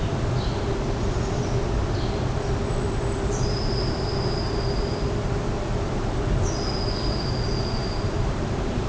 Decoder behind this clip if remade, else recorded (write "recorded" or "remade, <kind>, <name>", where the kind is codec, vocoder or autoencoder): recorded